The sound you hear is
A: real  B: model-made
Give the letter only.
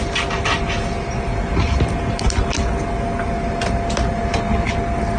A